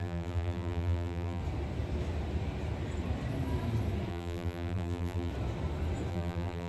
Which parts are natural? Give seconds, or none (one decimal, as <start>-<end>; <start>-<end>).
1.4-4.1; 5.3-6.1